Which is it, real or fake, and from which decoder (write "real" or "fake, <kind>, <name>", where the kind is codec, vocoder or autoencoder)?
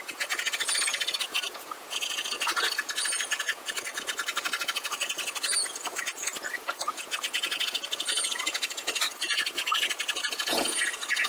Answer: fake, vocoder, Vocos